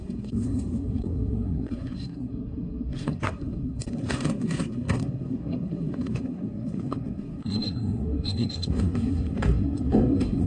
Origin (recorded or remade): remade